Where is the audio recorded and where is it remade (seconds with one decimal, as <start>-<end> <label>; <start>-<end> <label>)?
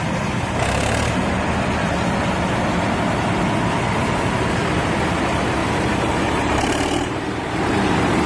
0.0-5.6 recorded; 5.6-7.5 remade; 7.5-8.3 recorded